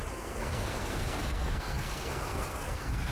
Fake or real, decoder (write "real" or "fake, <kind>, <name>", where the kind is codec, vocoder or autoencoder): fake, codec, SNAC